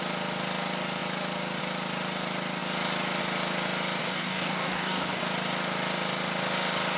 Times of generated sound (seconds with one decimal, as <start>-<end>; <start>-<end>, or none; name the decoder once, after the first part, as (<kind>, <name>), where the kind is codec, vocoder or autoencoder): 4.0-5.2 (codec, DAC)